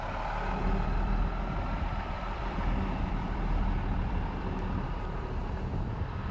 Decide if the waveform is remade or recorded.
remade